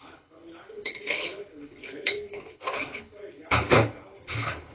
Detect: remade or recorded remade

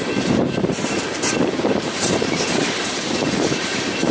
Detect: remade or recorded remade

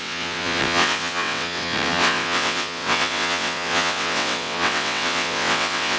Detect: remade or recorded remade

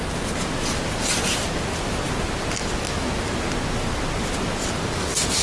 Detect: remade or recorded recorded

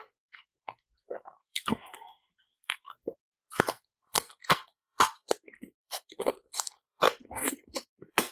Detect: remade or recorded remade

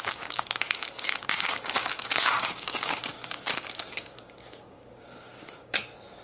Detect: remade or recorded remade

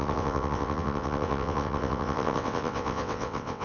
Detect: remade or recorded remade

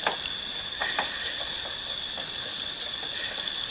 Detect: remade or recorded recorded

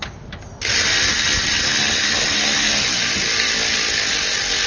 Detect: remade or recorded recorded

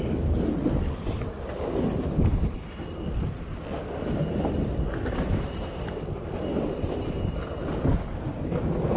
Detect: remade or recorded recorded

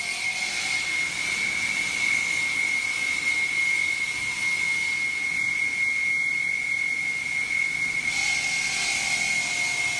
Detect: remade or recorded recorded